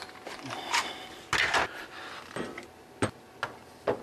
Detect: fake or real real